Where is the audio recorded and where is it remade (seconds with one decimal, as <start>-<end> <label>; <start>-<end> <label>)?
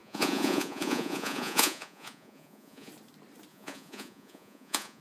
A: 0.0-2.9 remade; 2.9-3.5 recorded; 3.5-5.0 remade